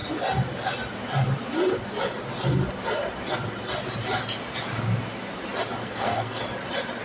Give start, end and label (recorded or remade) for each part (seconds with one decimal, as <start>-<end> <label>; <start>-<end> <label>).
0.0-5.8 recorded; 5.8-6.4 remade; 6.4-7.0 recorded